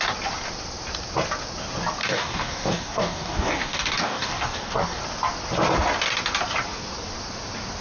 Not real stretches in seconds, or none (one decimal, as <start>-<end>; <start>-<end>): 2.0-5.0